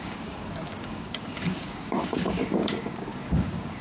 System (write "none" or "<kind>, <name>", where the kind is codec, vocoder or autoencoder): codec, DAC